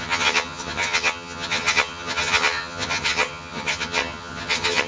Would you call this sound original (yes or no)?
no